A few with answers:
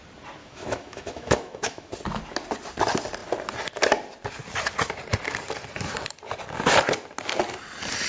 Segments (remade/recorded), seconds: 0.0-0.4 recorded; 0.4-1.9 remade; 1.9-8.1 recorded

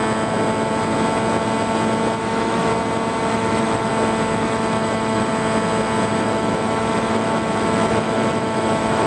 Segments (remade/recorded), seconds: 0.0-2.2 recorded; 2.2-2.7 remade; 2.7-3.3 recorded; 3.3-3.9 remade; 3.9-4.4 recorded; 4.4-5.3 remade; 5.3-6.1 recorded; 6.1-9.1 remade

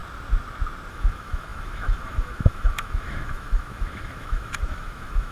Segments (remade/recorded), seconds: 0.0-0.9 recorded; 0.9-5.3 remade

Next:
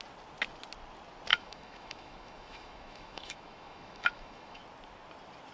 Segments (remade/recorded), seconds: 0.0-1.3 recorded; 1.3-4.6 remade; 4.6-5.5 recorded